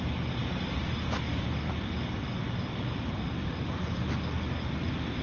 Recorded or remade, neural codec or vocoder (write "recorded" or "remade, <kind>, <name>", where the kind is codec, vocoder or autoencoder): recorded